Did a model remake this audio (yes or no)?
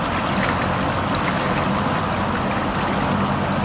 no